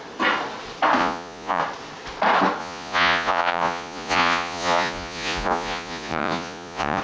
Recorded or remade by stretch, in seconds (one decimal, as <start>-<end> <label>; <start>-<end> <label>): 0.0-1.0 recorded; 1.0-1.6 remade; 1.6-2.6 recorded; 2.6-7.0 remade